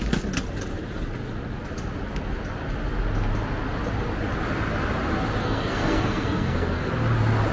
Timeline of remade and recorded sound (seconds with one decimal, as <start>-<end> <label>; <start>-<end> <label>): 0.0-5.4 recorded; 5.4-6.9 remade; 6.9-7.5 recorded

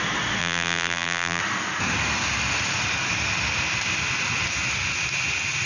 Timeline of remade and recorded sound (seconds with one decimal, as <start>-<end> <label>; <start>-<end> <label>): 0.0-0.4 recorded; 0.4-1.4 remade; 1.4-5.7 recorded

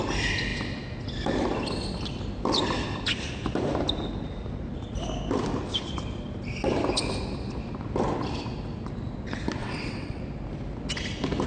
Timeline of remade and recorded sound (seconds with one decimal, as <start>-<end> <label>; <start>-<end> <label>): 0.0-9.6 recorded; 9.6-10.2 remade; 10.2-11.5 recorded

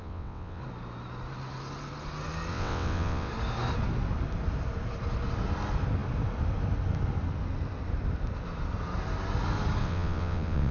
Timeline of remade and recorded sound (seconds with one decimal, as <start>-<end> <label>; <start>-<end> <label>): 0.0-0.6 remade; 0.6-2.5 recorded; 2.5-3.3 remade; 3.3-9.8 recorded; 9.8-10.7 remade

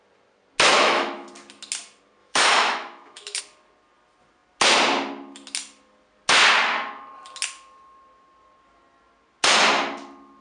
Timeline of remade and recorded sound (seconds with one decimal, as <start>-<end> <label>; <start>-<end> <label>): 0.0-0.7 recorded; 0.7-1.3 remade; 1.3-2.2 recorded; 2.2-3.4 remade; 3.4-10.4 recorded

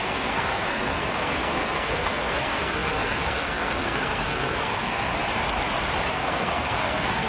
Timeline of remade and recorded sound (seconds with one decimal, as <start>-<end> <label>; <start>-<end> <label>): 0.0-5.1 remade; 5.1-6.1 recorded; 6.1-7.3 remade